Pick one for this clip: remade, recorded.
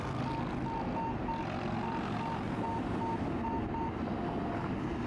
recorded